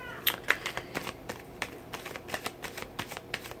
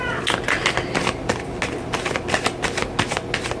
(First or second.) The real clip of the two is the second